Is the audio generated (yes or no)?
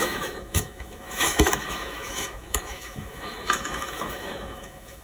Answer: yes